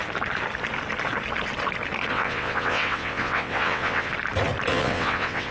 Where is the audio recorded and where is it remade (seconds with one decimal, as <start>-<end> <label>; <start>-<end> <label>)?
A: 0.0-2.1 recorded; 2.1-4.1 remade; 4.1-4.7 recorded; 4.7-5.5 remade